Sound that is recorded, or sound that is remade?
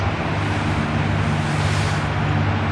recorded